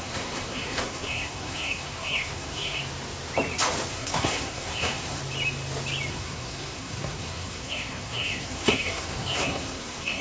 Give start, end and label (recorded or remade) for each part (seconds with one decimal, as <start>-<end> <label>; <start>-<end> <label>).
0.0-2.8 remade; 2.8-3.9 recorded; 3.9-5.2 remade; 5.2-6.1 recorded; 6.1-10.2 remade

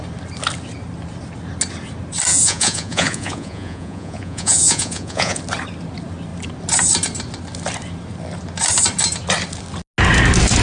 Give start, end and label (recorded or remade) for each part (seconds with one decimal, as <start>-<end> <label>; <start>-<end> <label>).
0.0-2.3 recorded; 2.3-5.4 remade; 5.4-10.6 recorded

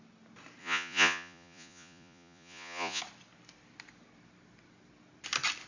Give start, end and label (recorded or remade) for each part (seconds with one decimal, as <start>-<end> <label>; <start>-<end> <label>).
0.0-0.6 recorded; 0.6-3.0 remade; 3.0-5.7 recorded

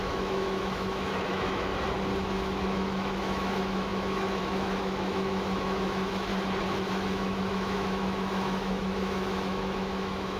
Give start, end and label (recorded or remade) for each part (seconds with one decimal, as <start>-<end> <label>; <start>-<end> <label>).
0.0-1.7 remade; 1.7-2.2 recorded; 2.2-6.3 remade; 6.3-6.9 recorded; 6.9-10.4 remade

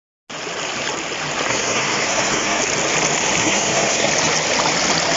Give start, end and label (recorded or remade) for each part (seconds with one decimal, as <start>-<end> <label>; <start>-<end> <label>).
0.0-1.5 recorded; 1.5-2.6 remade; 2.6-3.4 recorded; 3.4-4.1 remade; 4.1-5.2 recorded

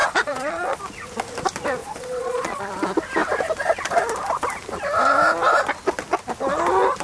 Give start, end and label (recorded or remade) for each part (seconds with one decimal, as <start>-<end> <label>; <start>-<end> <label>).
0.0-0.8 remade; 0.8-1.8 recorded; 1.8-2.7 remade; 2.7-7.0 recorded

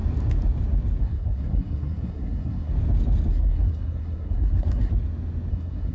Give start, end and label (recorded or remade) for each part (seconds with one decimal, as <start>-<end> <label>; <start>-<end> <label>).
0.0-1.0 recorded; 1.0-2.7 remade; 2.7-3.3 recorded; 3.3-4.9 remade; 4.9-5.5 recorded; 5.5-5.9 remade

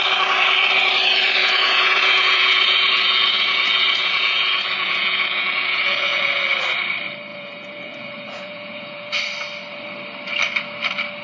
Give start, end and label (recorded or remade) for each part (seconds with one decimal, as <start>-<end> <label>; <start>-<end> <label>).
0.0-1.4 recorded; 1.4-6.4 remade; 6.4-7.3 recorded; 7.3-9.2 remade; 9.2-11.2 recorded